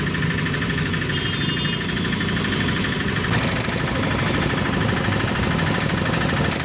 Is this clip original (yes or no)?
yes